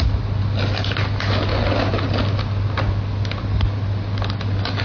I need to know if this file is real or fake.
real